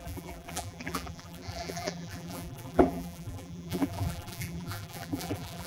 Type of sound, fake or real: fake